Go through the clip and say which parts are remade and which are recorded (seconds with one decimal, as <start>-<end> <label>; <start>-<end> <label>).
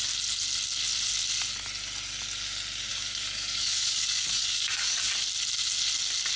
0.0-2.9 recorded; 2.9-5.1 remade; 5.1-6.4 recorded